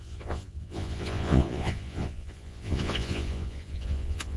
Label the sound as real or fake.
fake